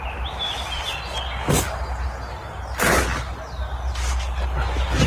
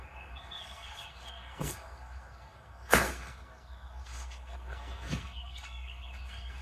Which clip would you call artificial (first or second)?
second